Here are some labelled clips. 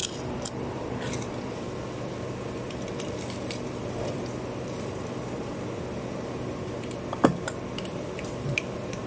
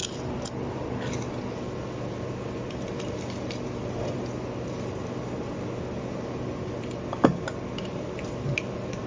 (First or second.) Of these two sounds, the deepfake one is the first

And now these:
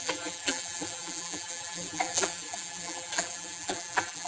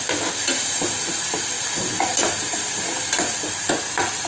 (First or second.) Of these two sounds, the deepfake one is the first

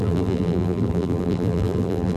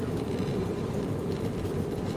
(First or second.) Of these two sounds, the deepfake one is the first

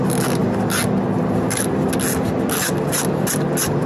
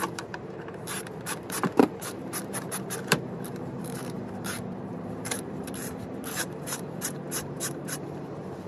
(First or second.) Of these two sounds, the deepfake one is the second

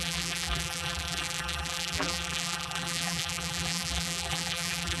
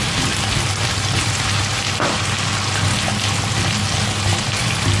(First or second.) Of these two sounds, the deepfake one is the first